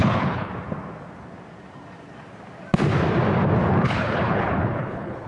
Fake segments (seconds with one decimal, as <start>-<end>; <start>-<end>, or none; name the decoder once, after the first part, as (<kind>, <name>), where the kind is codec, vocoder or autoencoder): 0.0-0.5 (codec, HILCodec); 3.7-5.3